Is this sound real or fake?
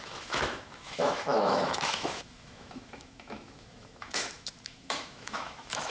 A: fake